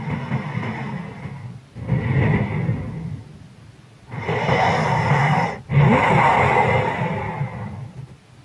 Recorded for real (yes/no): yes